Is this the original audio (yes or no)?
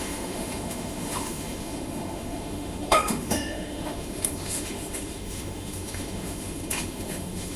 no